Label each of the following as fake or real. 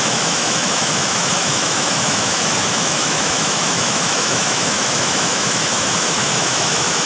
fake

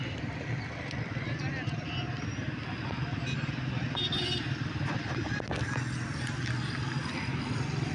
real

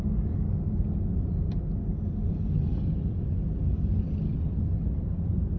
real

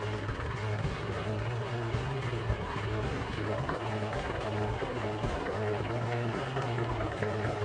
fake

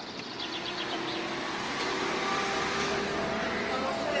real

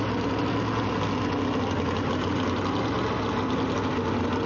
real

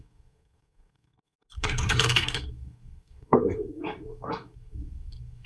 fake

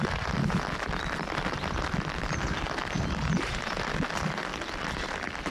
real